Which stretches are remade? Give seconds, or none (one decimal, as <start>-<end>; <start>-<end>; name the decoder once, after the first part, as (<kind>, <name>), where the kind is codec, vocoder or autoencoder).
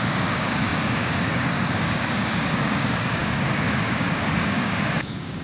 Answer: 0.0-5.4 (codec, DAC)